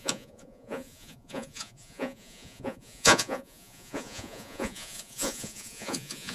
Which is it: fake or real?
fake